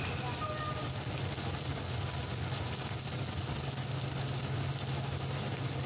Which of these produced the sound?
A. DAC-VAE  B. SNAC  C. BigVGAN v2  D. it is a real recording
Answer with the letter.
D